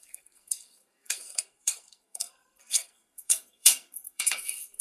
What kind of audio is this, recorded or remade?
remade